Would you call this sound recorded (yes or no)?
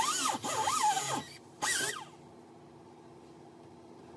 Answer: yes